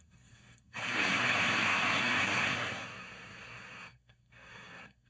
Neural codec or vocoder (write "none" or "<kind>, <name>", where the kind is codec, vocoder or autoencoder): codec, SNAC